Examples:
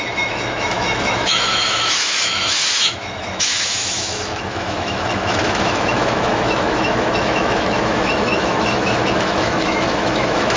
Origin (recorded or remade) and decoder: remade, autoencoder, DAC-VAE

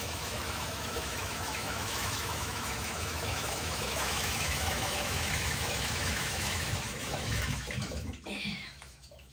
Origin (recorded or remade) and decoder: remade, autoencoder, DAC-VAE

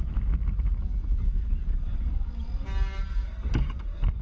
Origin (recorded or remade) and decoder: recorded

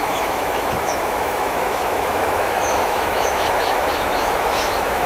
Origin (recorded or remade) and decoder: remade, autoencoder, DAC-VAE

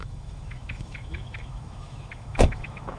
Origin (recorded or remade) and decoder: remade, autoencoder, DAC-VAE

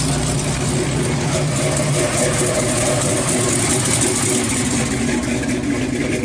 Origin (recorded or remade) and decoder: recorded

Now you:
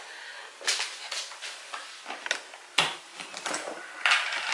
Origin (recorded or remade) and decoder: recorded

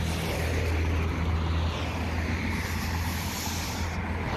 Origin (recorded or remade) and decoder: recorded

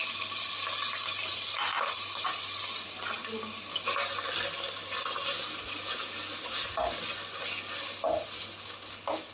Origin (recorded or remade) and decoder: recorded